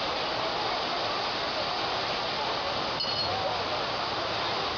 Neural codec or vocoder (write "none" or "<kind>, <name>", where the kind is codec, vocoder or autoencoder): none